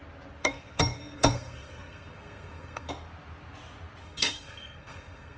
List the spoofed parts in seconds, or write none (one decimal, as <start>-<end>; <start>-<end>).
0.4-2.9; 4.0-5.4